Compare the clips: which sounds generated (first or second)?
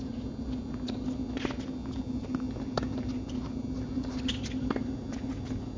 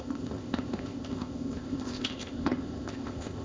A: second